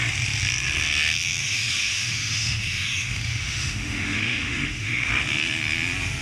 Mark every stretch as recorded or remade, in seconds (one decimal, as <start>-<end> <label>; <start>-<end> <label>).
0.0-1.4 recorded; 1.4-5.1 remade; 5.1-6.2 recorded